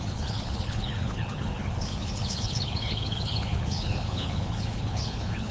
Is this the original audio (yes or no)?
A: no